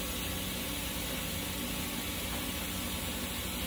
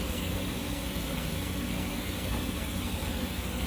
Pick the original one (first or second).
first